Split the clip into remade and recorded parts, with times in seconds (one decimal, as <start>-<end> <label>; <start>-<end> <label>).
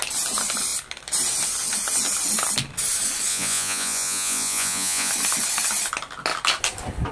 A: 0.0-3.3 recorded; 3.3-5.1 remade; 5.1-7.1 recorded